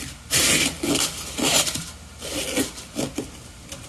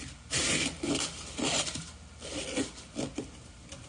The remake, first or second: second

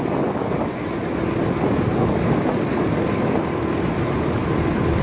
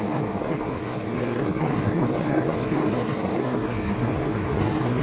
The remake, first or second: second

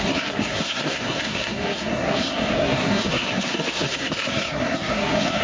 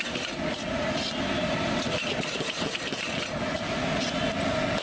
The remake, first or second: first